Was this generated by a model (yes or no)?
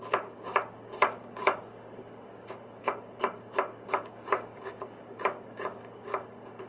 yes